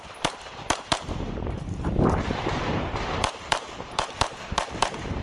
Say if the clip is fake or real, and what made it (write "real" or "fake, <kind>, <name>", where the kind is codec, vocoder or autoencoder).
fake, vocoder, BigVGAN v2